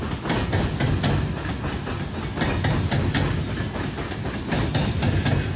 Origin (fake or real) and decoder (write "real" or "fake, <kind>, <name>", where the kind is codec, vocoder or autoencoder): real